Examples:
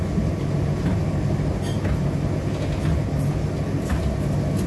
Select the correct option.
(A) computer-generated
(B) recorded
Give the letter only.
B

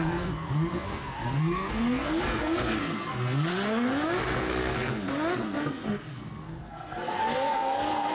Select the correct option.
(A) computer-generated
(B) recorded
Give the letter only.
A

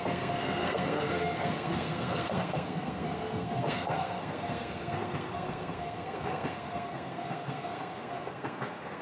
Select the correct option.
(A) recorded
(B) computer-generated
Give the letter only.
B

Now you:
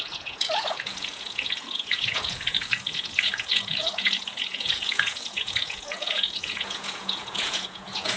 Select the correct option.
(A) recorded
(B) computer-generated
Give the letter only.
B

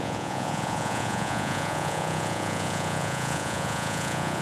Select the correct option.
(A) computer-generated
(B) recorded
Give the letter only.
A